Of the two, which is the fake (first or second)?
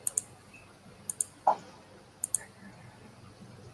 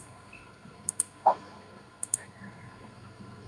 second